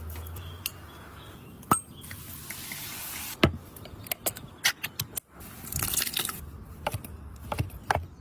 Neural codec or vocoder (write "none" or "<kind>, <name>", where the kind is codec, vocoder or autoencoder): none